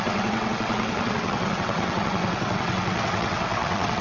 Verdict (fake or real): fake